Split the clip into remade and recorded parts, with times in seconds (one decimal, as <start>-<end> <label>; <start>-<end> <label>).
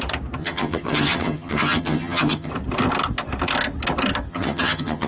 0.0-0.4 recorded; 0.4-2.5 remade; 2.5-4.3 recorded; 4.3-5.1 remade